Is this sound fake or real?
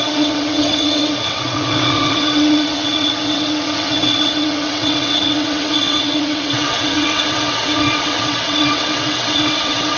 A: fake